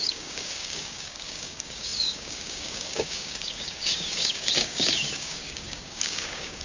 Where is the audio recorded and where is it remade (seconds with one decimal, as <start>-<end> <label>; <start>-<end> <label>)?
0.0-6.6 remade